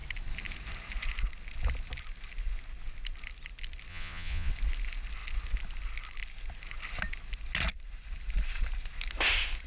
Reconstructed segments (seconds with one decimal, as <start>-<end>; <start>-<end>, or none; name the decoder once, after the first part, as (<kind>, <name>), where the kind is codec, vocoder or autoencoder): 3.9-4.5 (vocoder, Vocos)